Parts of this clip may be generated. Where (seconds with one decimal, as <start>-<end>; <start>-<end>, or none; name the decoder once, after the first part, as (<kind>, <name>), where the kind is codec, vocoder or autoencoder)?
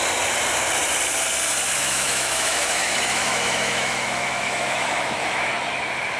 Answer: 1.8-5.5 (autoencoder, DAC-VAE)